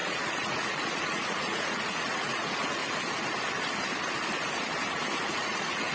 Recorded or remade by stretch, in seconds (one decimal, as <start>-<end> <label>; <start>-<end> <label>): 0.0-2.8 remade; 2.8-5.2 recorded; 5.2-5.9 remade